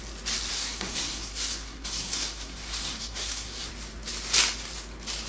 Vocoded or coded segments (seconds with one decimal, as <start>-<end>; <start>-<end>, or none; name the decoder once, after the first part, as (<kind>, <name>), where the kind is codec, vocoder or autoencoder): 0.5-3.7 (codec, SNAC)